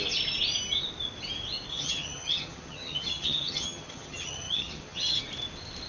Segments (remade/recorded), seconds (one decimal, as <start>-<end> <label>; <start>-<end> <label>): 0.0-1.7 recorded; 1.7-5.2 remade; 5.2-5.9 recorded

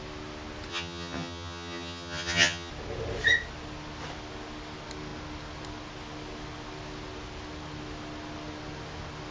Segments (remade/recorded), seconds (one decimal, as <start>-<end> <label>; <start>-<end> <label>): 0.0-0.7 recorded; 0.7-2.7 remade; 2.7-9.3 recorded

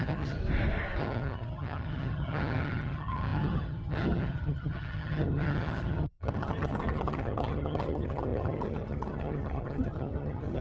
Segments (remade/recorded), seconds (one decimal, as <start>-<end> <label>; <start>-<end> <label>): 0.0-0.4 remade; 0.4-1.0 recorded; 1.0-10.6 remade

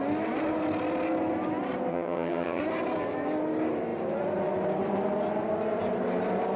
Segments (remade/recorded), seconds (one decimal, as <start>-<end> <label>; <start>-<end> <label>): 0.0-1.9 recorded; 1.9-2.6 remade; 2.6-6.6 recorded

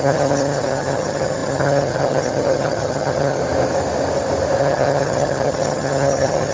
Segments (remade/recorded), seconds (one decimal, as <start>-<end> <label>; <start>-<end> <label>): 0.0-3.4 remade; 3.4-4.6 recorded; 4.6-6.5 remade

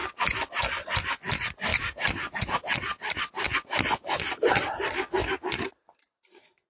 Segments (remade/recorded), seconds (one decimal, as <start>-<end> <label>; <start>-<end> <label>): 0.0-6.7 recorded

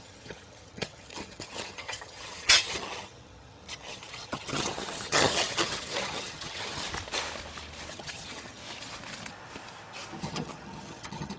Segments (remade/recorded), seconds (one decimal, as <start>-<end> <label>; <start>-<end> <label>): 0.0-6.8 remade; 6.8-7.9 recorded; 7.9-8.6 remade; 8.6-10.2 recorded; 10.2-11.4 remade